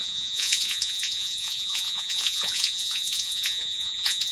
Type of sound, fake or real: fake